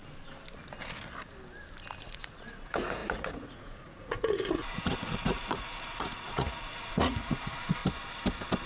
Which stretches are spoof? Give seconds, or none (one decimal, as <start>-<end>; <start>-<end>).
2.0-7.8